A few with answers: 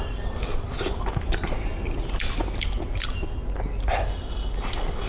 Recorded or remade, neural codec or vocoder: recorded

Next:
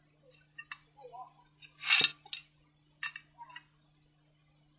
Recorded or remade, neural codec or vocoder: recorded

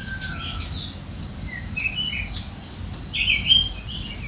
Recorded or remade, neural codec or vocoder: recorded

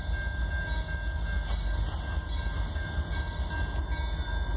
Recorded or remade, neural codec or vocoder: recorded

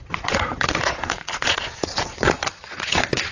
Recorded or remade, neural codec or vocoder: remade, vocoder, Vocos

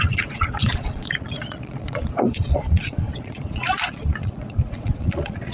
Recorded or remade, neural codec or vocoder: remade, vocoder, Vocos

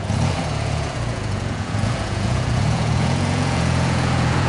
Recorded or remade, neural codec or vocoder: remade, vocoder, Vocos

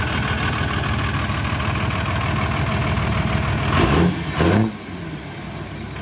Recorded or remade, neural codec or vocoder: recorded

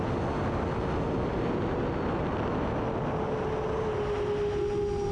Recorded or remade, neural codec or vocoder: recorded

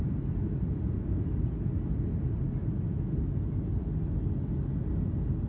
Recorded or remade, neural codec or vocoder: recorded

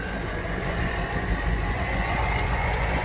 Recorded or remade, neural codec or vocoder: remade, vocoder, Vocos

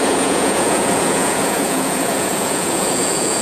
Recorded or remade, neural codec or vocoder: remade, vocoder, Vocos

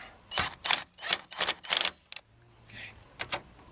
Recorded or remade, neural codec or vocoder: recorded